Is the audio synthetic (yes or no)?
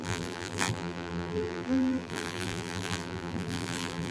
yes